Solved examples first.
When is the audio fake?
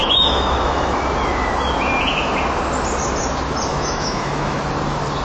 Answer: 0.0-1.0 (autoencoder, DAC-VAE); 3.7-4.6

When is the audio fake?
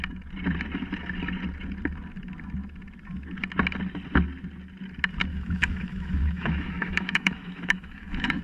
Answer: 5.3-8.4 (autoencoder, DAC-VAE)